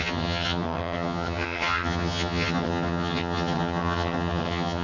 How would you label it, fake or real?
fake